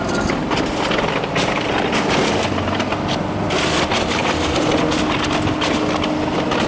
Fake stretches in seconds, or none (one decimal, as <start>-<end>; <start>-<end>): none

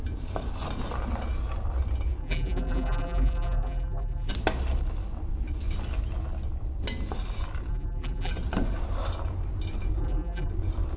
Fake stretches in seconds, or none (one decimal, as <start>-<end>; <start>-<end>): 2.2-4.3; 7.7-8.3; 10.0-10.5

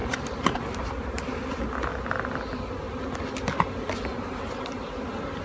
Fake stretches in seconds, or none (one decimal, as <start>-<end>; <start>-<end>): 0.0-1.5

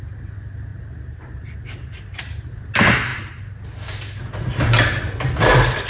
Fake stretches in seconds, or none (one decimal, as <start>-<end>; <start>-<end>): 0.7-2.5

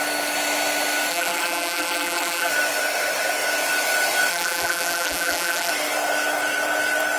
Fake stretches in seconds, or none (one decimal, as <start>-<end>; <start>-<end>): 1.1-2.5; 4.3-5.7